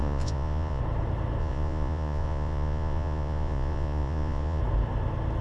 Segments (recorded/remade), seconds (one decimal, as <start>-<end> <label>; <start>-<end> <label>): 0.0-0.8 remade; 0.8-1.4 recorded; 1.4-4.6 remade; 4.6-5.4 recorded